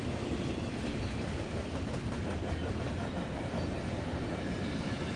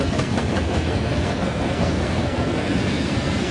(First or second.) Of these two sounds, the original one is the first